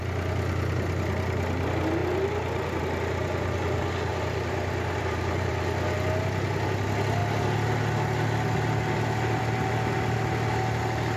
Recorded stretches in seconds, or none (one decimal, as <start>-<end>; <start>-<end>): 0.0-4.1; 5.5-11.2